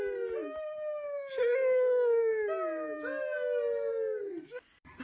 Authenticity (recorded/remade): recorded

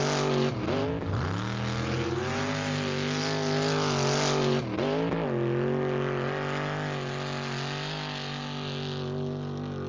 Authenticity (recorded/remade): recorded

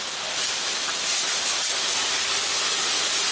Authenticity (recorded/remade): recorded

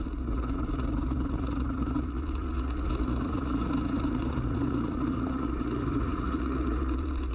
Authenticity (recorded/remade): remade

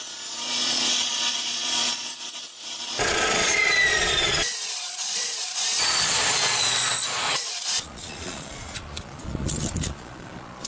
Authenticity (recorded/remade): remade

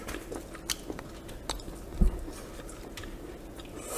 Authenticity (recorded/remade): recorded